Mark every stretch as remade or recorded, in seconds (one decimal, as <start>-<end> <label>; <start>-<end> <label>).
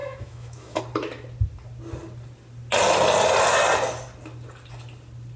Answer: 0.0-0.8 remade; 0.8-5.4 recorded